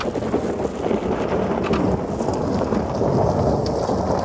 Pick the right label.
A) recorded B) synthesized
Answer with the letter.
A